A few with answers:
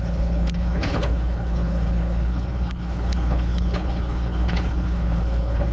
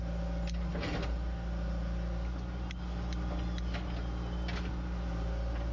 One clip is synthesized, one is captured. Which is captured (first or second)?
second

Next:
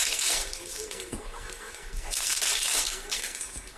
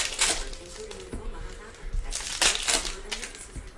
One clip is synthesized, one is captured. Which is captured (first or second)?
second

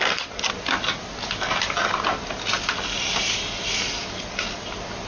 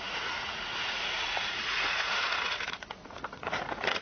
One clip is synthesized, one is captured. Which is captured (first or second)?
first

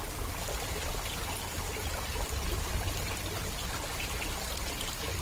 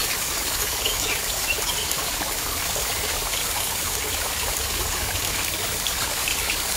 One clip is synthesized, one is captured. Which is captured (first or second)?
first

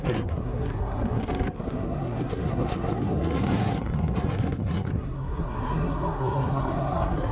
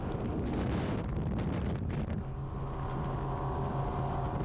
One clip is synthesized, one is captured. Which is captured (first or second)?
second